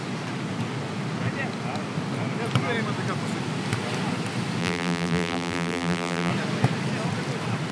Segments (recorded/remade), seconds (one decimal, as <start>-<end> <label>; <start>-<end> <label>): 0.0-4.6 recorded; 4.6-6.3 remade; 6.3-7.7 recorded